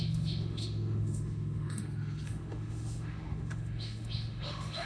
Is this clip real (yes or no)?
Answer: no